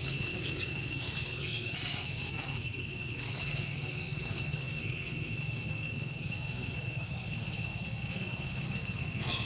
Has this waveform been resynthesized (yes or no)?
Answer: yes